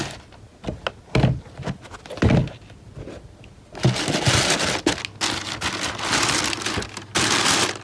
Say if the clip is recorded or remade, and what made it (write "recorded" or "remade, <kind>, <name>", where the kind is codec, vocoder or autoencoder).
recorded